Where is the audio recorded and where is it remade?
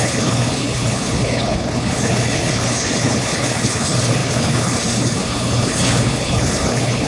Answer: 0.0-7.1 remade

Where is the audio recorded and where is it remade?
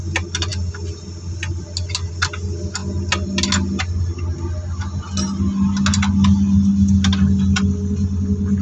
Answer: 0.0-8.6 recorded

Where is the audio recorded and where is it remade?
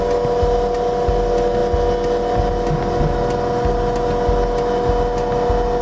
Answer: 0.0-5.8 recorded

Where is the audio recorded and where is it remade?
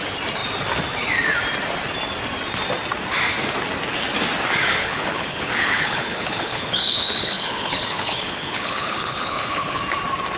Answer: 0.0-4.8 recorded; 4.8-9.8 remade; 9.8-10.4 recorded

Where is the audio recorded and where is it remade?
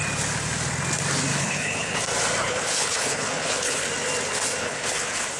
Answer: 0.0-1.3 recorded; 1.3-2.0 remade; 2.0-2.4 recorded; 2.4-3.9 remade; 3.9-4.6 recorded; 4.6-5.4 remade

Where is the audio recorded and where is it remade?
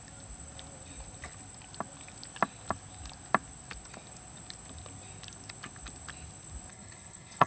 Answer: 0.0-6.7 recorded; 6.7-7.5 remade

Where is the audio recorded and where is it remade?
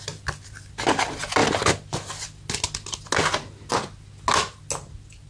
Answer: 0.0-5.3 recorded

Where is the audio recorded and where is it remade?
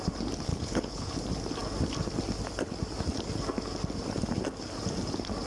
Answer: 0.0-0.5 recorded; 0.5-1.1 remade; 1.1-5.5 recorded